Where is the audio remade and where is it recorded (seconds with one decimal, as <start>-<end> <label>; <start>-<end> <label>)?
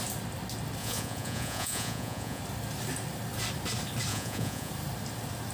0.0-0.8 recorded; 0.8-2.4 remade; 2.4-4.1 recorded; 4.1-4.7 remade; 4.7-5.5 recorded